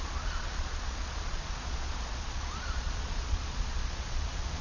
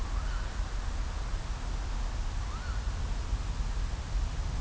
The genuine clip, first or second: second